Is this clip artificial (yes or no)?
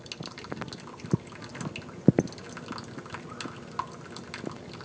no